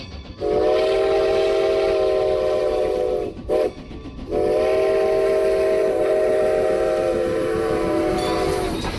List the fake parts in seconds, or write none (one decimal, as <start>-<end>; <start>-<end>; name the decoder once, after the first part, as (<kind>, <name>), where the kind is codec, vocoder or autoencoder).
2.6-3.7 (vocoder, BigVGAN v2); 5.8-8.1